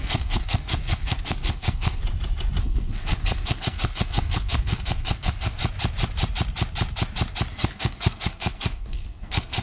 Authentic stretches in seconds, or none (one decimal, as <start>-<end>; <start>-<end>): 2.0-2.6; 5.6-7.5

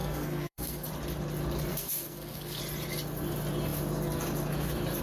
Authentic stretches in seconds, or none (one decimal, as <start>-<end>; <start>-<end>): 0.9-1.7; 2.6-5.0

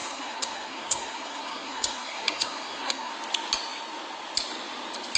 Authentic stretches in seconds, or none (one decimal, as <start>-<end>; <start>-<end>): 3.1-5.2

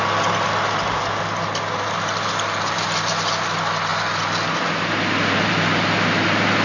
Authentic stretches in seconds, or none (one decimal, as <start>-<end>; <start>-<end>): 0.0-6.6